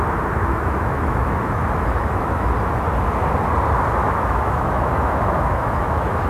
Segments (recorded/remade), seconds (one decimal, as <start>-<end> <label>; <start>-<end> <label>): 0.0-0.4 recorded; 0.4-2.5 remade; 2.5-4.0 recorded; 4.0-6.3 remade